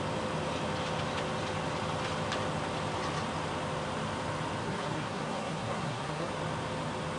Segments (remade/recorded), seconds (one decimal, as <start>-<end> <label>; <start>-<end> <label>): 0.0-4.6 recorded; 4.6-6.3 remade; 6.3-7.2 recorded